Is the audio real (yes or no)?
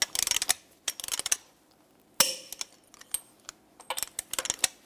yes